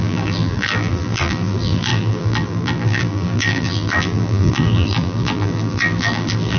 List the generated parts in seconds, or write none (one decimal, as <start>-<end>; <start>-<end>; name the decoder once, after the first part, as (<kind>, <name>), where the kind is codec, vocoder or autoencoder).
0.0-6.6 (vocoder, BigVGAN v2)